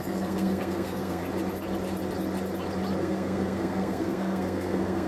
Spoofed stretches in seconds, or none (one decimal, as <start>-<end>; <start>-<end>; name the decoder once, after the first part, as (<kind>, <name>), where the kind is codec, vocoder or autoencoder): 0.0-1.2 (codec, SNAC); 3.0-5.1